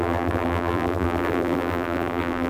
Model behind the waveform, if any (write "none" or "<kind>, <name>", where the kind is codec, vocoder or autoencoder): vocoder, BigVGAN v2